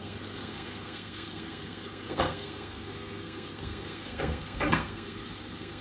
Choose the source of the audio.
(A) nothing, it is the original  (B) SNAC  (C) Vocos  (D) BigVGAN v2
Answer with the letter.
B